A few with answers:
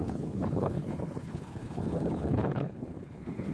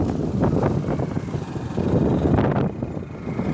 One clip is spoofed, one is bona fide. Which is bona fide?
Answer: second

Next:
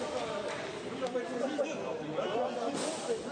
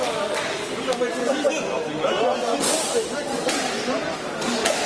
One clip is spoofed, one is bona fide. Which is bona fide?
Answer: second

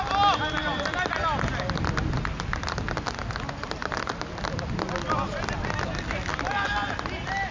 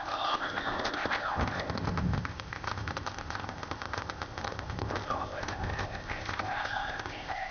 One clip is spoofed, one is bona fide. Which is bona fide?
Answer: first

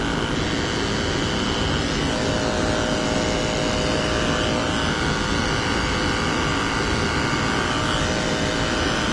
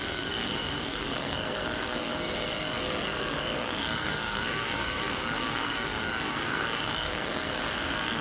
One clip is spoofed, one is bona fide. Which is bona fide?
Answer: first